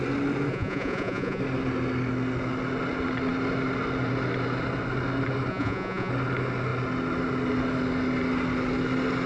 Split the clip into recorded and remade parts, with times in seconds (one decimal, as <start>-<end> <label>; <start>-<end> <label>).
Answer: 0.0-0.5 recorded; 0.5-1.4 remade; 1.4-5.5 recorded; 5.5-6.1 remade; 6.1-9.3 recorded